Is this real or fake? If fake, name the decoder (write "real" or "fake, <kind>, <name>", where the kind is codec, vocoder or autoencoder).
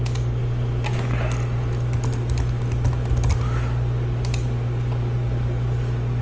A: real